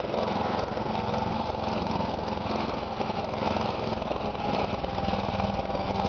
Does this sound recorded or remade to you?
remade